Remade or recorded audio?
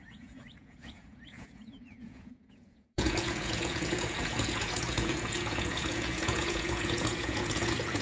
remade